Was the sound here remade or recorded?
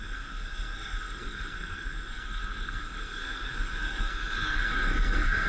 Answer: remade